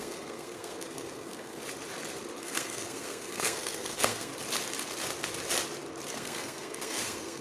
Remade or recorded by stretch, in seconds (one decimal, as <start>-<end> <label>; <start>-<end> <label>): 0.0-1.6 remade; 1.6-2.4 recorded; 2.4-4.3 remade; 4.3-6.1 recorded; 6.1-7.4 remade